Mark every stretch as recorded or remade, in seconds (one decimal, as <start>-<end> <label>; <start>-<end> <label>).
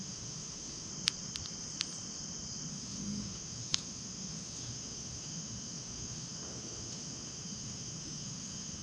0.0-0.9 remade; 0.9-2.7 recorded; 2.7-8.8 remade